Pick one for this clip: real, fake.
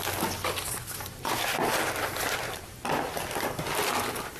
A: real